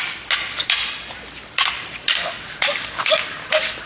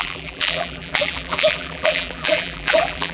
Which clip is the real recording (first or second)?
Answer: first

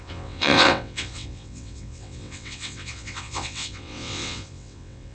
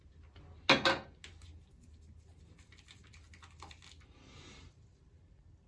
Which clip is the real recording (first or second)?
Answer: second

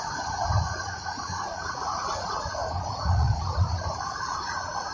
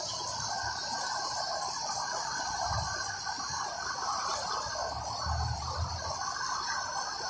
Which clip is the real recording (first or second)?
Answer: second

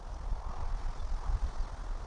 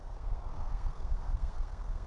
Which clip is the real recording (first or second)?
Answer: first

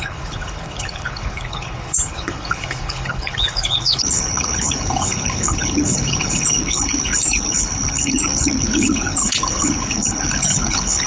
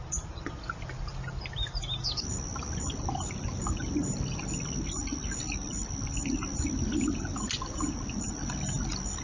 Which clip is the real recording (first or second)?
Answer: second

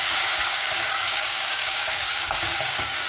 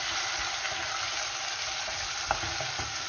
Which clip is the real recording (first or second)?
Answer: second